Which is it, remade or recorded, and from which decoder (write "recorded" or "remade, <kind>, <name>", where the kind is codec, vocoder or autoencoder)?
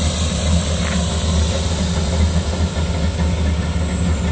recorded